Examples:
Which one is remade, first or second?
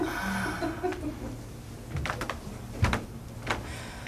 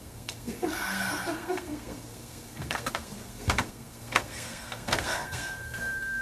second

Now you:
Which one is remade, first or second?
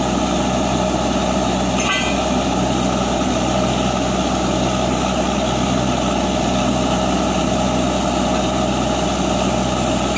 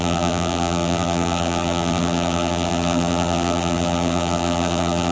second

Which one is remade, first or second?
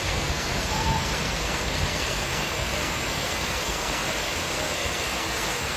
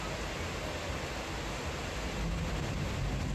first